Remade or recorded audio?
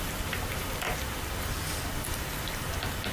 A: recorded